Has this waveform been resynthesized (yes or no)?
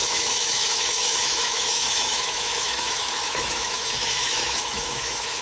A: yes